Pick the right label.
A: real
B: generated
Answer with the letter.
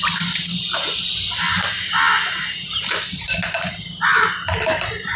A